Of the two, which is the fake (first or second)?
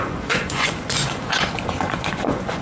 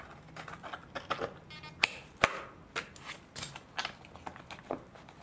first